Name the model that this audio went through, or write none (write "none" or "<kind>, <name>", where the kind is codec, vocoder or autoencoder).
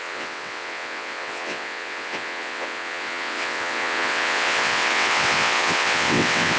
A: vocoder, WaveNeXt